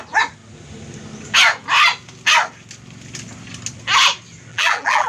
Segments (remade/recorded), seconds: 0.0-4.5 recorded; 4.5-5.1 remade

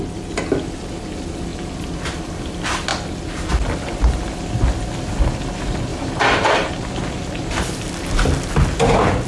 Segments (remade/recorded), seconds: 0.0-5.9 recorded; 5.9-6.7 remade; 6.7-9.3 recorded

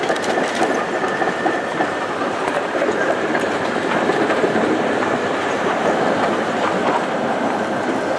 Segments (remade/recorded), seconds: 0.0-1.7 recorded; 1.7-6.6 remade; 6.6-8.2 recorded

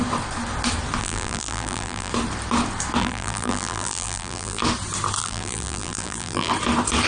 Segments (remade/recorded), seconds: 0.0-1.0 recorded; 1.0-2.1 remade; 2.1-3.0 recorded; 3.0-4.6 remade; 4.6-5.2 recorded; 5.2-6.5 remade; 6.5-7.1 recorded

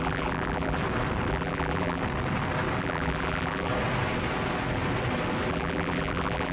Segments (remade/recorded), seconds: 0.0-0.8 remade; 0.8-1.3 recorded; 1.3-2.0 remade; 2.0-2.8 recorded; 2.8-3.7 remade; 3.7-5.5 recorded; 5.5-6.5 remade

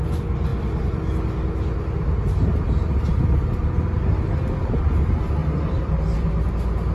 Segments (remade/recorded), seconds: 0.0-5.4 recorded; 5.4-6.5 remade; 6.5-6.9 recorded

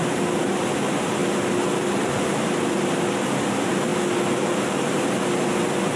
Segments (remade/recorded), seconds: 0.0-6.0 recorded